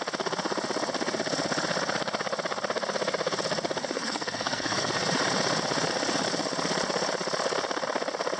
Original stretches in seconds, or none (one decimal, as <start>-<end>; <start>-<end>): 0.0-3.8; 4.9-8.4